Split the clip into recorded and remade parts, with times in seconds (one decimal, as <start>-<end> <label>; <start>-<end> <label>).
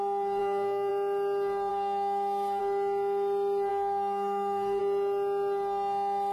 0.0-0.4 recorded; 0.4-0.9 remade; 0.9-1.7 recorded; 1.7-2.6 remade; 2.6-3.7 recorded; 3.7-4.8 remade; 4.8-6.3 recorded